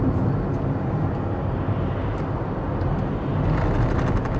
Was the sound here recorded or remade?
recorded